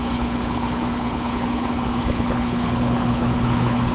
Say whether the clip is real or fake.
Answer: fake